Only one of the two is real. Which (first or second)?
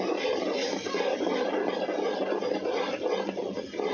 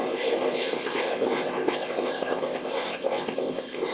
first